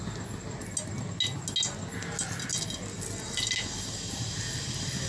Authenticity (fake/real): real